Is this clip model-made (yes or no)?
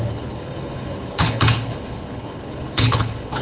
yes